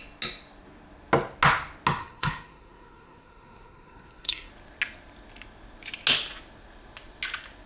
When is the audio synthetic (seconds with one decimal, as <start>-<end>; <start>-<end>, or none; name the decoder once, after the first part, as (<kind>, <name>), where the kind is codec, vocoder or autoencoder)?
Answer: 2.0-4.5 (codec, SNAC)